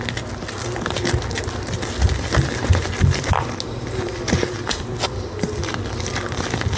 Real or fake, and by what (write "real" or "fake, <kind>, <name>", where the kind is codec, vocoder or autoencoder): real